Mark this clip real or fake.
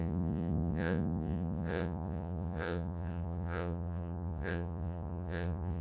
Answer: fake